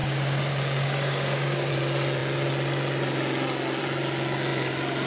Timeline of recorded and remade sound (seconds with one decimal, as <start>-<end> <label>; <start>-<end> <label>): 0.0-1.7 remade; 1.7-5.1 recorded